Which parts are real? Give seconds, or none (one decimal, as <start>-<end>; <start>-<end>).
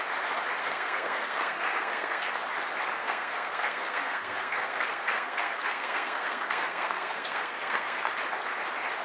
0.0-0.6; 2.3-3.0; 8.1-9.0